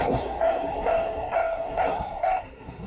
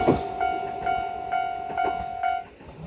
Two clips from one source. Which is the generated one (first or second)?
first